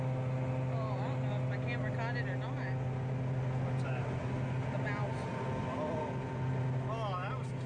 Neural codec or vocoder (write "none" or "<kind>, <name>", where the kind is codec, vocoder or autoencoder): none